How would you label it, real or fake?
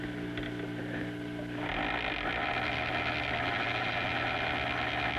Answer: real